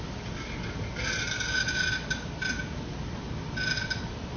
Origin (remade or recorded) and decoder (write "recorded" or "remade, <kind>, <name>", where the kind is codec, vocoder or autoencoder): recorded